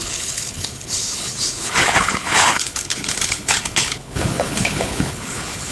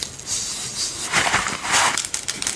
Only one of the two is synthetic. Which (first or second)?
first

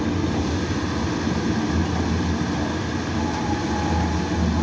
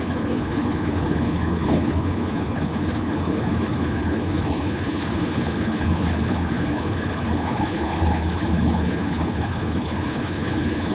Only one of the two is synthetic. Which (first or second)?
second